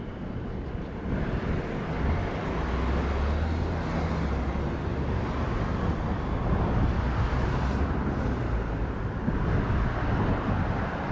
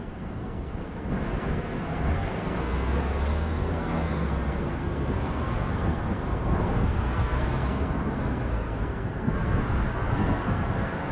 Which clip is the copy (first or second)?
second